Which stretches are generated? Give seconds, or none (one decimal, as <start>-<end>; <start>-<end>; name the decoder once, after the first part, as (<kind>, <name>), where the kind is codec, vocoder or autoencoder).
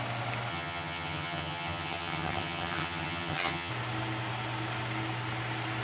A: 0.5-3.7 (vocoder, HiFi-GAN)